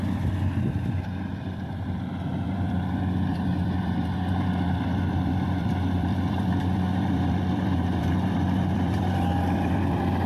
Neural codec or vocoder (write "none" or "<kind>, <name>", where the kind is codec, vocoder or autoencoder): vocoder, BigVGAN v2